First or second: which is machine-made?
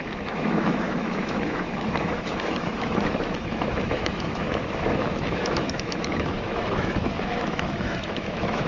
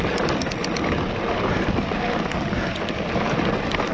first